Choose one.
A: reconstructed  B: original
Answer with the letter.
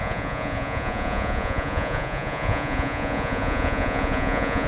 A